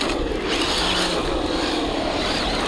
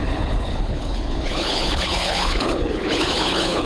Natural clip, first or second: first